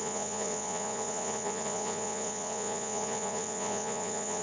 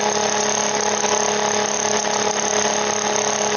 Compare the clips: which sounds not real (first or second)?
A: first